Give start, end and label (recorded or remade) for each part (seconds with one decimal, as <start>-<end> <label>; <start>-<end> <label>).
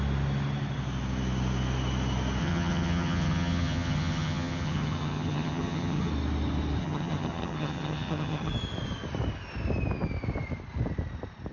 0.0-2.4 recorded; 2.4-6.1 remade; 6.1-6.8 recorded; 6.8-8.5 remade; 8.5-11.5 recorded